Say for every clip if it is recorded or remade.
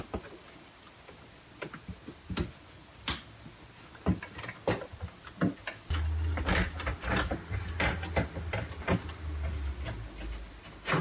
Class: recorded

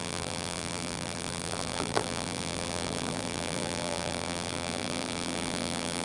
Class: remade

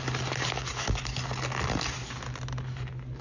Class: recorded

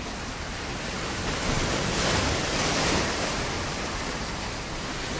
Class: recorded